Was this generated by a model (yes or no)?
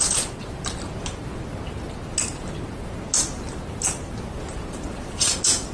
no